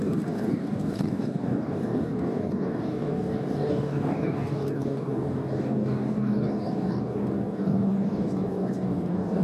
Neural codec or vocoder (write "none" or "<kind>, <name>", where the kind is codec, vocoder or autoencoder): codec, DAC